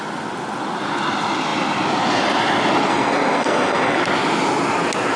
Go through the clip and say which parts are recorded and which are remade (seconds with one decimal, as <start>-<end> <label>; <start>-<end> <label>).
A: 0.0-2.9 recorded; 2.9-4.0 remade; 4.0-5.2 recorded